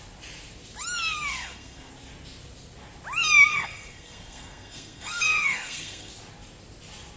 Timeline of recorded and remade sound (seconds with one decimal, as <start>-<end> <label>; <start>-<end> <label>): 0.0-1.3 recorded; 1.3-1.9 remade; 1.9-3.5 recorded; 3.5-6.1 remade; 6.1-7.2 recorded